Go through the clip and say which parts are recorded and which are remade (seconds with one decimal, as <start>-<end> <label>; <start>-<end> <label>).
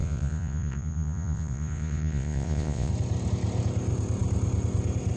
0.0-2.9 remade; 2.9-5.2 recorded